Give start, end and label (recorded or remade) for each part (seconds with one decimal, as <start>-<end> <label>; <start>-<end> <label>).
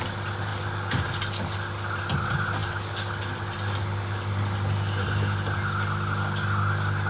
0.0-7.1 recorded